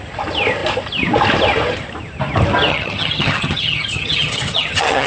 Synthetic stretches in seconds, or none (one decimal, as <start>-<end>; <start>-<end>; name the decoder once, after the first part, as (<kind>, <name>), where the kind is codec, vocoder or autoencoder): 2.7-5.1 (vocoder, HiFi-GAN)

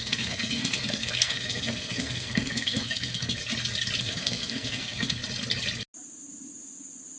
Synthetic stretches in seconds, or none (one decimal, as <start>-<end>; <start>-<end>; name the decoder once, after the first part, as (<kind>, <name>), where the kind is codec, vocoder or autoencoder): 0.0-3.4 (codec, SNAC); 4.0-5.2

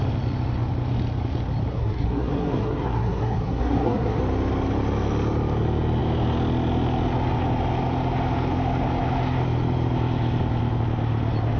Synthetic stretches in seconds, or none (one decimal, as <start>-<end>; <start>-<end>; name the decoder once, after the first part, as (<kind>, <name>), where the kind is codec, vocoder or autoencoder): 1.7-4.2 (codec, SNAC)

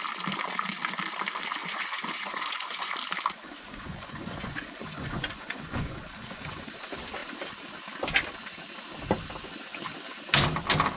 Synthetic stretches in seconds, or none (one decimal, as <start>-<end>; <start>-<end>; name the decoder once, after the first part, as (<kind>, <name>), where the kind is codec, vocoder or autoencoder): 1.6-2.9 (vocoder, Vocos); 3.4-6.7

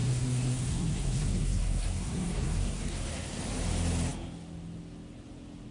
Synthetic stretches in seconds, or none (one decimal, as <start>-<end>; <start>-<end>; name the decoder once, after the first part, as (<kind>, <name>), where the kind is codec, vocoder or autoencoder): 0.0-3.4 (codec, SNAC)

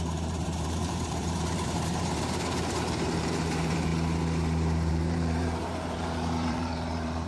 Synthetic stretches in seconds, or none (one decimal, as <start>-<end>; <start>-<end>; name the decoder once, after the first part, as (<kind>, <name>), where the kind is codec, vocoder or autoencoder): 0.0-3.9 (vocoder, BigVGAN v2); 4.9-7.3